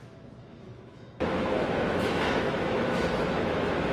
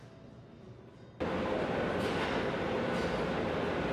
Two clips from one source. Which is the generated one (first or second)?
first